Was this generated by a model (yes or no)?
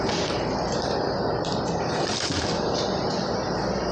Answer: yes